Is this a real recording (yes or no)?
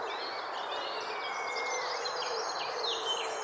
yes